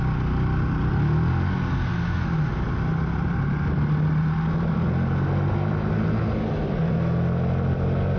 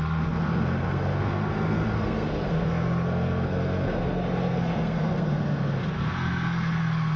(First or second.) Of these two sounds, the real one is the first